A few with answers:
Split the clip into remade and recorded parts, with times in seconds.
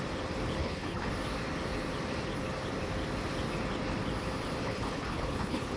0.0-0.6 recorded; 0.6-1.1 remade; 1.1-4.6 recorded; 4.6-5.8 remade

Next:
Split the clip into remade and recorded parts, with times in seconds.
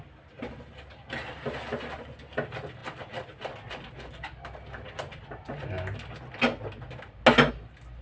0.0-8.0 recorded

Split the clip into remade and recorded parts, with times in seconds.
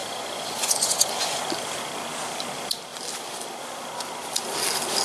0.0-1.4 remade; 1.4-5.0 recorded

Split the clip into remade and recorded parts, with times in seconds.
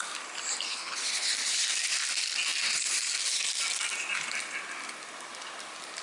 0.0-0.7 recorded; 0.7-1.3 remade; 1.3-6.0 recorded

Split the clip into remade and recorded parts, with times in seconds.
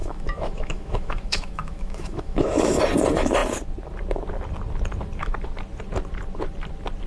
0.0-2.8 remade; 2.8-7.1 recorded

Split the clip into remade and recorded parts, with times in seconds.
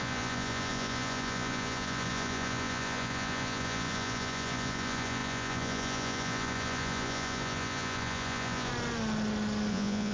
0.0-8.7 remade; 8.7-9.7 recorded; 9.7-10.1 remade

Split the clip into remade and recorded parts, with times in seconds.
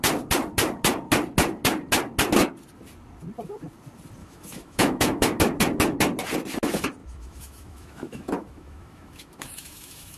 0.0-4.2 recorded; 4.2-5.4 remade; 5.4-7.0 recorded; 7.0-10.2 remade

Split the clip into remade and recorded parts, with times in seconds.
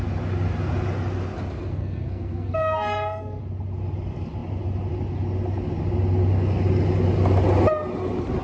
0.0-1.7 recorded; 1.7-3.4 remade; 3.4-8.4 recorded